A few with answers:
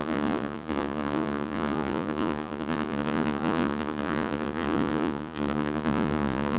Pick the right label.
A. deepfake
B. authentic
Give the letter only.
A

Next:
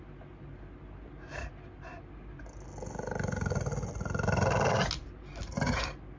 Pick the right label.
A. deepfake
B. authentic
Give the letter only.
B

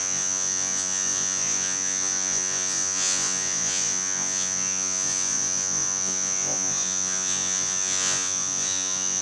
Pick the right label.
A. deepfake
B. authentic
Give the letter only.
A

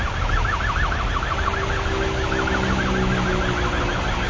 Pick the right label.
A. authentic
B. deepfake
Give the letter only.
A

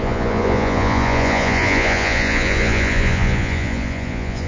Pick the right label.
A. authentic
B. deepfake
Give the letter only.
B